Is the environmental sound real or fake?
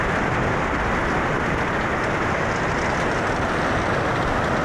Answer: real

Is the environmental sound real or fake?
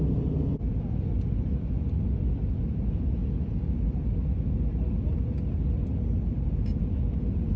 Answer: real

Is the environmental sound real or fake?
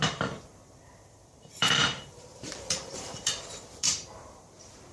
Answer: fake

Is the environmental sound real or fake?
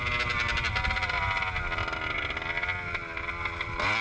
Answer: real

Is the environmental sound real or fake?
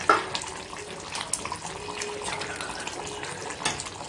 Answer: real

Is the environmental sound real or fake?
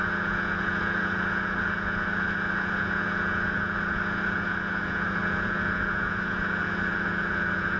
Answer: fake